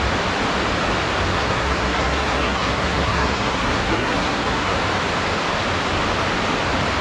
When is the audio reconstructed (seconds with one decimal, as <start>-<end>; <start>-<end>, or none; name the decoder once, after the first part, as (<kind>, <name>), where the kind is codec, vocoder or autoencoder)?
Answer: 1.3-4.8 (codec, SNAC)